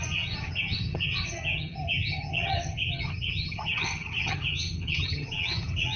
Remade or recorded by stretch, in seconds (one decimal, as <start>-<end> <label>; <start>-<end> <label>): 0.0-6.0 remade